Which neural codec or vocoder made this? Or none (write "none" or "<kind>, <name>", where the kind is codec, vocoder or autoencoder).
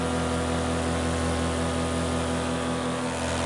none